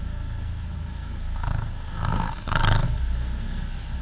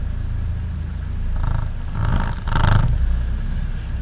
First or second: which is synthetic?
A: first